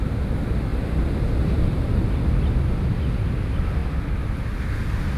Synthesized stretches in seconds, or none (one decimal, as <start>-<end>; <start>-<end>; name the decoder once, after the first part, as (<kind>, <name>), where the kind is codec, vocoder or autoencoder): none